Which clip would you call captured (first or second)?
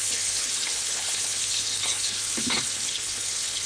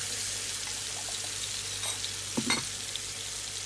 second